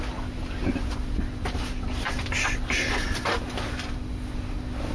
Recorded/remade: recorded